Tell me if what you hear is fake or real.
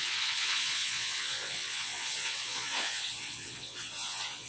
fake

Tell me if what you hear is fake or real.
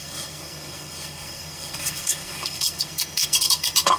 fake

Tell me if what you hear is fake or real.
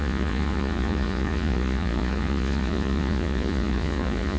fake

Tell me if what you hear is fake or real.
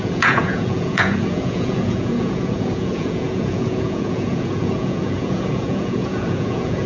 fake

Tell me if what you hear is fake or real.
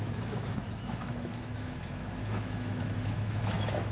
fake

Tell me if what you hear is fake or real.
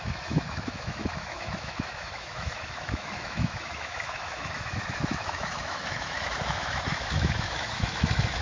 fake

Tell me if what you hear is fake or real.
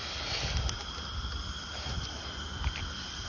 real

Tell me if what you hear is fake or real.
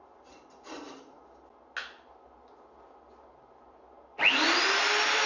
real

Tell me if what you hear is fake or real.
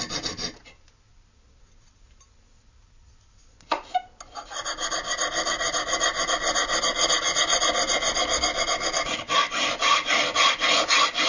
real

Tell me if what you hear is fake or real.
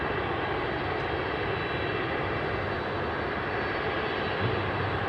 real